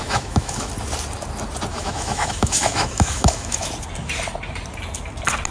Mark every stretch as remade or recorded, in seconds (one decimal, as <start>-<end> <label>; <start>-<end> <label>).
0.0-0.7 remade; 0.7-1.7 recorded; 1.7-3.7 remade; 3.7-5.5 recorded

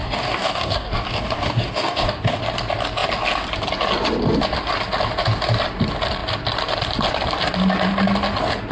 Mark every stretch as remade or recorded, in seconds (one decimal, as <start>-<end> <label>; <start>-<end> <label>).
0.0-2.4 remade; 2.4-8.7 recorded

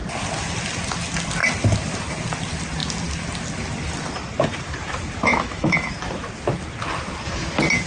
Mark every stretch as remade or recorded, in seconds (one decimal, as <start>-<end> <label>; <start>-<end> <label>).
0.0-5.3 recorded; 5.3-5.9 remade; 5.9-7.9 recorded

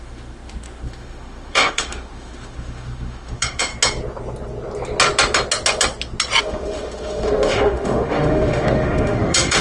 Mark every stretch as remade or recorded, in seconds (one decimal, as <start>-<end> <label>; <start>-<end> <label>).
0.0-3.7 remade; 3.7-6.4 recorded; 6.4-9.6 remade

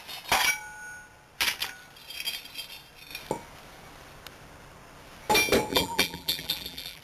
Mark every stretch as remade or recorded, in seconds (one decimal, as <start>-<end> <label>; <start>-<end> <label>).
0.0-5.7 recorded; 5.7-7.0 remade